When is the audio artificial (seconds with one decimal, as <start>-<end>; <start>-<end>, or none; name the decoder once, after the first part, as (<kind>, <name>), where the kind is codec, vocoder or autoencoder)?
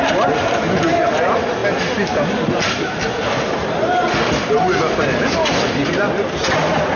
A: none